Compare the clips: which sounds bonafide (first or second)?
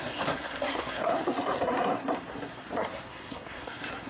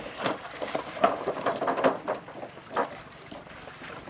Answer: second